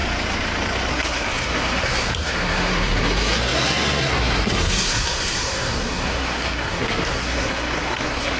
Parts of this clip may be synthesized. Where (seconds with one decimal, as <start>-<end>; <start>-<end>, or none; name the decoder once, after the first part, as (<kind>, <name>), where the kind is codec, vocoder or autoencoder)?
0.9-8.4 (codec, SNAC)